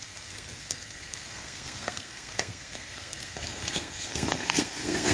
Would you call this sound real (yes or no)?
no